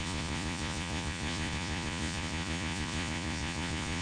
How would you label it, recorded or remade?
remade